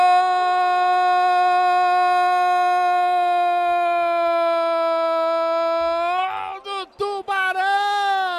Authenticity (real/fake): real